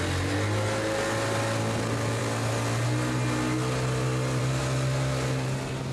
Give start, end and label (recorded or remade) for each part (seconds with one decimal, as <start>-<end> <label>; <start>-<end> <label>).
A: 0.0-5.9 recorded

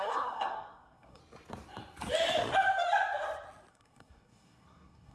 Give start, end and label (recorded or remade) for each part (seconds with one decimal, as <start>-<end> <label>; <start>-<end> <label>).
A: 0.0-1.2 remade; 1.2-3.7 recorded; 3.7-5.1 remade